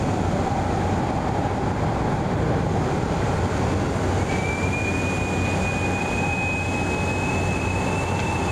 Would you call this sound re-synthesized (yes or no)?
no